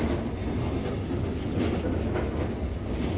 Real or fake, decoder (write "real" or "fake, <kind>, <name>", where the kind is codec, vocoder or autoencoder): real